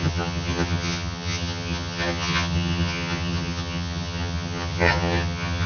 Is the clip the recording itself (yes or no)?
no